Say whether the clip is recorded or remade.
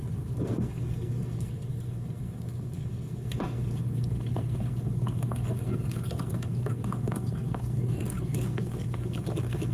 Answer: remade